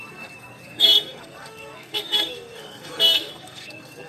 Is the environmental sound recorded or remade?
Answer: remade